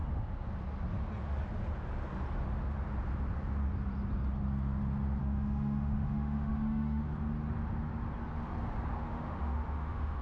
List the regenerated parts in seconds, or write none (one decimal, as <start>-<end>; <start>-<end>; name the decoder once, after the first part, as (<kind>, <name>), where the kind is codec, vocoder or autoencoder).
5.2-7.0 (autoencoder, DAC-VAE); 9.0-10.2